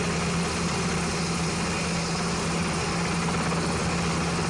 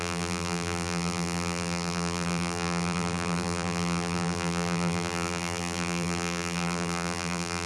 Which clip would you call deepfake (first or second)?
second